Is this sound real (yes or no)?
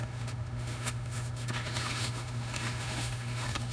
no